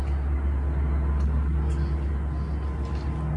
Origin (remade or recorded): recorded